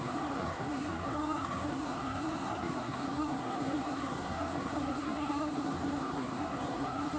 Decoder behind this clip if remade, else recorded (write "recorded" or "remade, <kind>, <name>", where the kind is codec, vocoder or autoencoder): remade, codec, SNAC